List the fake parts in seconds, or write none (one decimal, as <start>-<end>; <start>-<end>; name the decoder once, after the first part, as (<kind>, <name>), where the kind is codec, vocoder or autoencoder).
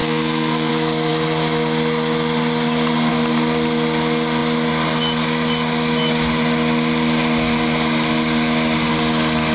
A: 0.0-0.7 (codec, SNAC)